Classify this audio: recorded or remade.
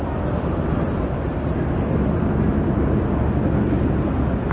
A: recorded